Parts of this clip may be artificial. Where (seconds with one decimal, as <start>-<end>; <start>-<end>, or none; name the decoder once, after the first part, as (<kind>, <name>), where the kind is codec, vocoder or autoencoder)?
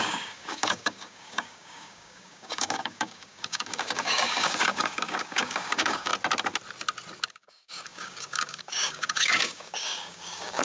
0.0-6.1 (codec, DAC); 7.3-10.6